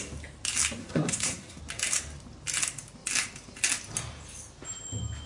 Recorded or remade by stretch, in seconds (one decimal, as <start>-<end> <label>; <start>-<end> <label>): 0.0-0.8 recorded; 0.8-1.6 remade; 1.6-5.3 recorded

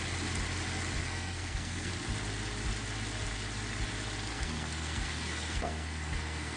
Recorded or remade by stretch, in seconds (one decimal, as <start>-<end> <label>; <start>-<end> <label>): 0.0-1.0 recorded; 1.0-1.9 remade; 1.9-4.3 recorded; 4.3-6.6 remade

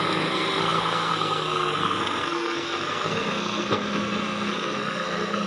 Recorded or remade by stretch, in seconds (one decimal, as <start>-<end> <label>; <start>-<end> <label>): 0.0-5.5 remade

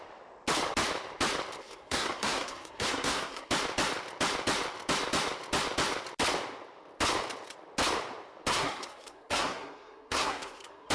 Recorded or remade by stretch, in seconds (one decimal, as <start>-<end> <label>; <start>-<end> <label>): 0.0-1.6 recorded; 1.6-3.5 remade; 3.5-8.5 recorded; 8.5-10.9 remade

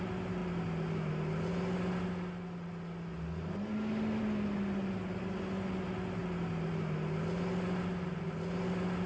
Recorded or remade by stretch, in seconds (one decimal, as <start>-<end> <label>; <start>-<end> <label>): 0.0-9.1 recorded

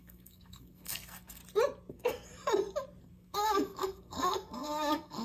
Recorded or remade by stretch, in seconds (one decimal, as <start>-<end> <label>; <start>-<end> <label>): 0.0-1.4 remade; 1.4-1.9 recorded; 1.9-2.3 remade; 2.3-3.0 recorded; 3.0-5.2 remade

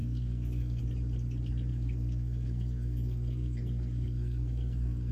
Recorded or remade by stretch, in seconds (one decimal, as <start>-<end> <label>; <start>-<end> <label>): 0.0-0.8 remade; 0.8-1.7 recorded; 1.7-5.1 remade

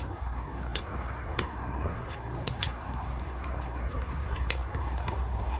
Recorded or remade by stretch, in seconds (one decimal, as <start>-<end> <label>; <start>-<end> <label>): 0.0-5.6 remade